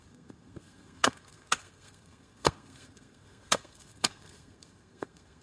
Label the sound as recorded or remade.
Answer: remade